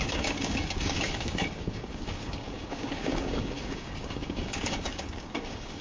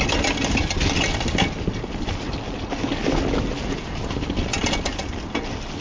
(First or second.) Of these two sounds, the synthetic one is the first